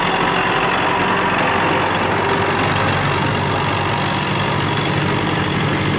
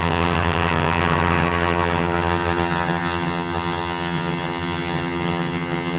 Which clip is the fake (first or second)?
second